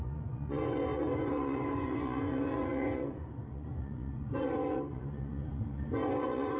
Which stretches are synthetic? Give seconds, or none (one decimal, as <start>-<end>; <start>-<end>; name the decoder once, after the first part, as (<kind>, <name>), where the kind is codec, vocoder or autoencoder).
0.0-6.6 (vocoder, Vocos)